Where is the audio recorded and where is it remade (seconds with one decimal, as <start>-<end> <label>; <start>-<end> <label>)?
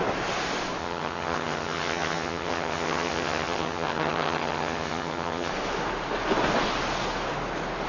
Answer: 0.0-0.8 recorded; 0.8-5.5 remade; 5.5-7.9 recorded